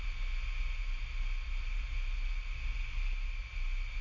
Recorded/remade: recorded